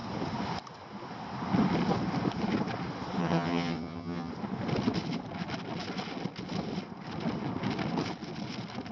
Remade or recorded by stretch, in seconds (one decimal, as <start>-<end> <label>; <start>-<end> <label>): 0.0-3.2 recorded; 3.2-4.3 remade; 4.3-8.9 recorded